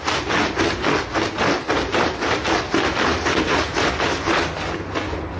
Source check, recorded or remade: recorded